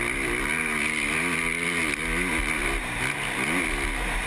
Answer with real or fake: real